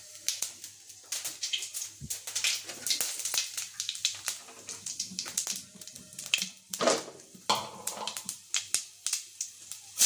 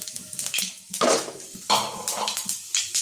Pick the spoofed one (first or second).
second